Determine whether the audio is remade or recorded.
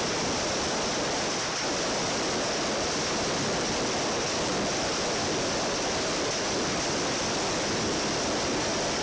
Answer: recorded